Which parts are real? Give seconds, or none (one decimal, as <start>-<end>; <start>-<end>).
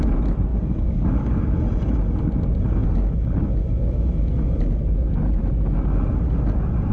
0.0-0.5; 1.4-6.9